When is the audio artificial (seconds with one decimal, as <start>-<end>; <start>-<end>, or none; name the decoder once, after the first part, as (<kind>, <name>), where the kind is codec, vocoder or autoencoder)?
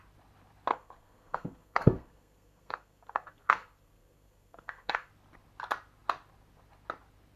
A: 0.7-5.1 (codec, SNAC)